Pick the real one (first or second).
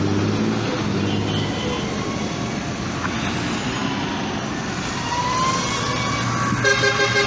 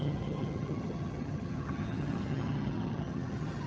first